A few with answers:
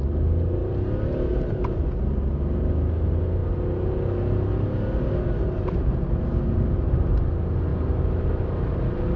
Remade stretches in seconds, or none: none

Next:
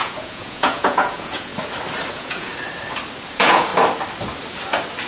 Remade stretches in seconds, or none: 0.0-1.5 (vocoder, Vocos); 2.1-2.5; 3.3-3.7

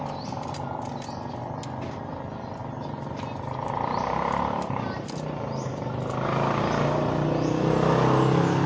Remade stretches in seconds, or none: none

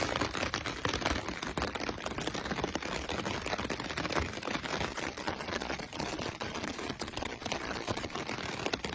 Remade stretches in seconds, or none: 4.9-8.2 (vocoder, Vocos)

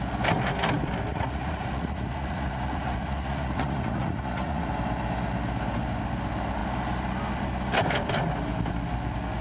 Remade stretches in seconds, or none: 1.1-4.7 (vocoder, Vocos)